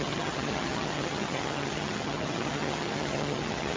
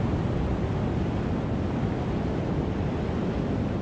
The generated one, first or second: first